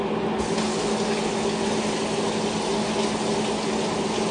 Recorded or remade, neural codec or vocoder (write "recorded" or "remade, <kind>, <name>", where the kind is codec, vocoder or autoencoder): recorded